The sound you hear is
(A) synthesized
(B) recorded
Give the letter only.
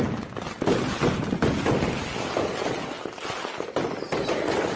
B